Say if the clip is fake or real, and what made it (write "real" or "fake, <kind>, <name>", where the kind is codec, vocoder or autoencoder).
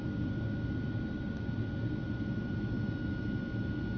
real